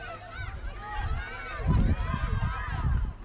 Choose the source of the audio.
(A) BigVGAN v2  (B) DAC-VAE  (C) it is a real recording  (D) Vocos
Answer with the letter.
C